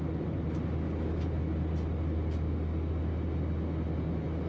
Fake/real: real